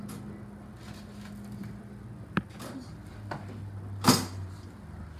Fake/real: real